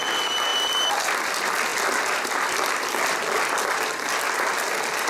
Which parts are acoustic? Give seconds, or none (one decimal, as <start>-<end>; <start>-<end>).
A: 0.0-5.1